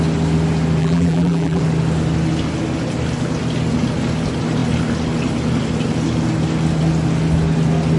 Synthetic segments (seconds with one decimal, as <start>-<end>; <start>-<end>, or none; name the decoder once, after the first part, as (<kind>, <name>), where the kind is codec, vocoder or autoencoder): 0.8-1.6 (vocoder, BigVGAN v2)